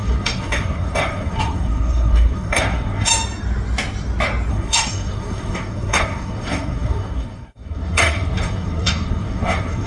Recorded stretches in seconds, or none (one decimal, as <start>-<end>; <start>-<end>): 3.1-4.5